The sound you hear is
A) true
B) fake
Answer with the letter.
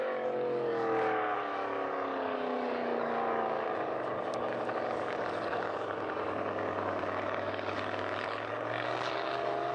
B